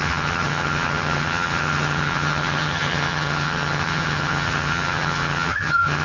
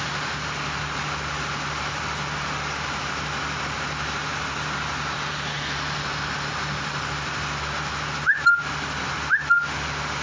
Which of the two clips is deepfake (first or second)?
first